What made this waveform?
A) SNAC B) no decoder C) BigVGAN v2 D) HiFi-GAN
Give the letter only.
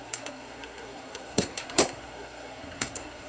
A